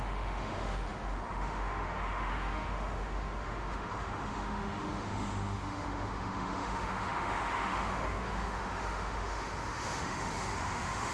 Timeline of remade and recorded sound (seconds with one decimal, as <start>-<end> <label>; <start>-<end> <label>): 0.0-11.1 remade